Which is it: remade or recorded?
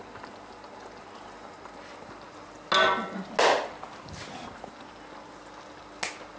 recorded